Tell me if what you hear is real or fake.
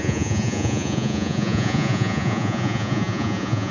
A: fake